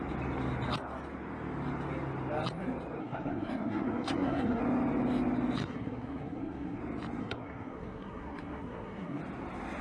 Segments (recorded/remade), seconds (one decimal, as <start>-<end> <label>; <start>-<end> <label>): 0.0-3.0 recorded; 3.0-4.6 remade; 4.6-5.6 recorded; 5.6-6.8 remade; 6.8-7.2 recorded; 7.2-9.2 remade; 9.2-9.8 recorded